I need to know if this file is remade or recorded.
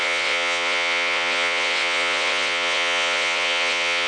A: remade